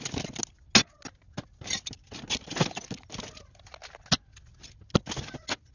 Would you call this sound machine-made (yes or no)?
no